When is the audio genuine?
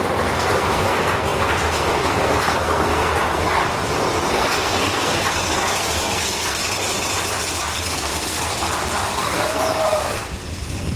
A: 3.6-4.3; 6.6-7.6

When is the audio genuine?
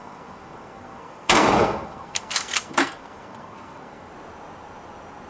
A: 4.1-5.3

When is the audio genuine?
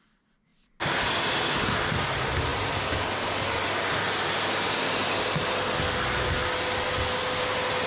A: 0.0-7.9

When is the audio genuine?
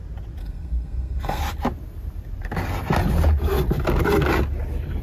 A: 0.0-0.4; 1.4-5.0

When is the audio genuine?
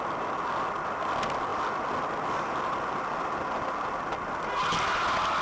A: 0.0-5.4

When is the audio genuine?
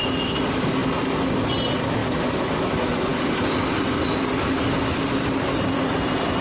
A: 0.0-6.4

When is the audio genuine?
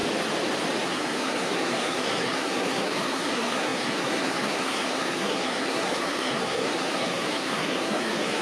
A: 0.0-0.8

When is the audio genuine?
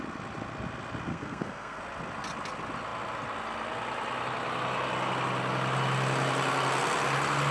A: 0.0-1.1; 1.8-7.5